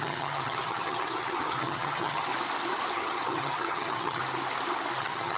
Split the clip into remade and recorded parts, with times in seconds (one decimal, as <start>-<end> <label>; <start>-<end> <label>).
0.0-2.3 remade; 2.3-2.9 recorded; 2.9-4.2 remade; 4.2-5.0 recorded; 5.0-5.4 remade